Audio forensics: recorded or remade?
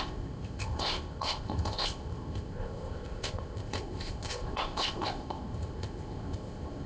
remade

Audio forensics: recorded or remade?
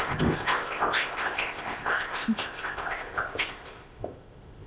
remade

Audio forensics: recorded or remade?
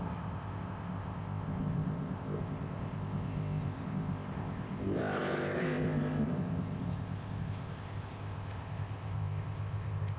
remade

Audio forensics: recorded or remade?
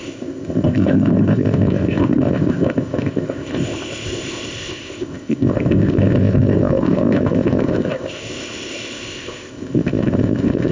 remade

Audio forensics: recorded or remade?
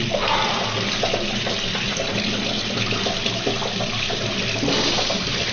recorded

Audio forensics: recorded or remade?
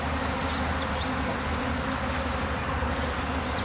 recorded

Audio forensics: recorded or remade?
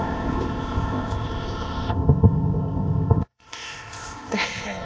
remade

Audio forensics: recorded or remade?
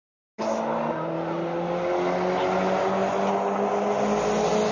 recorded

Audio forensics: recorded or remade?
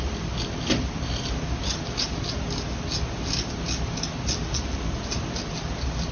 recorded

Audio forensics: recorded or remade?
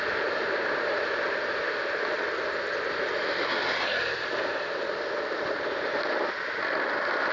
recorded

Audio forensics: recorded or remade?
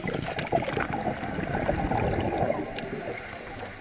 recorded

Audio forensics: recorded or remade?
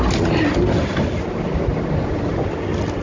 recorded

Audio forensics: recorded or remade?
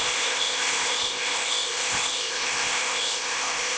remade